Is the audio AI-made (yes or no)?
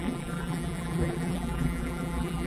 yes